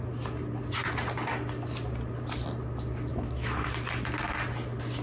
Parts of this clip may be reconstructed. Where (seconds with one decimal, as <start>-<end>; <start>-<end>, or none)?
3.1-3.7